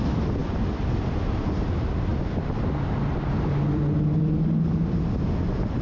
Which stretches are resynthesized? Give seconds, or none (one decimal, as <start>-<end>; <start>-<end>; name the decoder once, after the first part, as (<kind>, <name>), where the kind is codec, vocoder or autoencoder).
0.4-1.7 (vocoder, BigVGAN v2)